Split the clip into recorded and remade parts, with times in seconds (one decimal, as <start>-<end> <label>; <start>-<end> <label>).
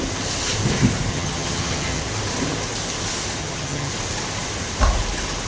0.0-1.1 recorded; 1.1-2.0 remade; 2.0-3.4 recorded; 3.4-3.9 remade; 3.9-5.5 recorded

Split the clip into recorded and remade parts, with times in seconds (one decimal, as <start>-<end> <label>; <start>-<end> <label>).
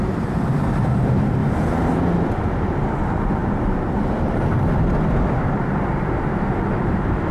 0.0-1.4 remade; 1.4-2.5 recorded; 2.5-7.3 remade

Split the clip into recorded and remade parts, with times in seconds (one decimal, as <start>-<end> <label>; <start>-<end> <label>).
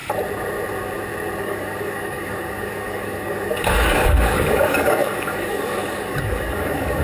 0.0-1.4 recorded; 1.4-7.0 remade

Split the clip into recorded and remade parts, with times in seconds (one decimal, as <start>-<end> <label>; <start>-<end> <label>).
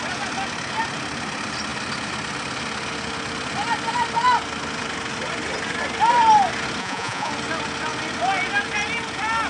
0.0-6.8 recorded; 6.8-7.3 remade; 7.3-9.5 recorded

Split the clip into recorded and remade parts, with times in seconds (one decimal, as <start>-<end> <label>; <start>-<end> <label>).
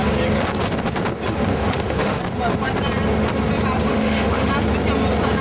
0.0-1.5 recorded; 1.5-2.2 remade; 2.2-3.9 recorded; 3.9-4.5 remade; 4.5-5.4 recorded